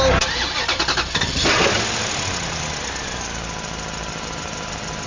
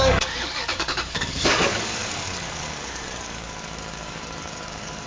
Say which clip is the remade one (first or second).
second